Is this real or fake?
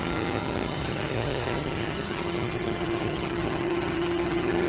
fake